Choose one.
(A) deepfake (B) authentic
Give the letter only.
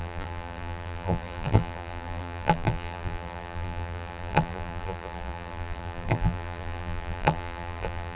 A